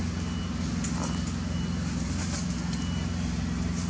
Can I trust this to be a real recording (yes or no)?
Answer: yes